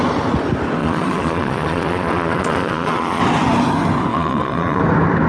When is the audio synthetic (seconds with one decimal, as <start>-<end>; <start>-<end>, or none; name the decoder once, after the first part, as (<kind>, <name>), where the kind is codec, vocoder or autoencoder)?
0.8-3.2 (vocoder, Vocos); 4.1-4.8